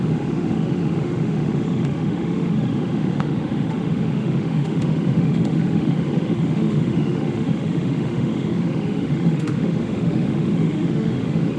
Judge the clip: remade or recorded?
remade